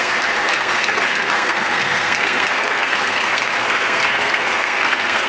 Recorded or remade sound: remade